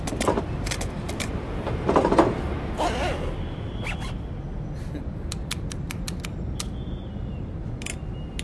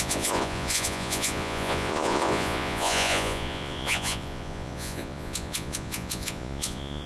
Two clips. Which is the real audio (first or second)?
first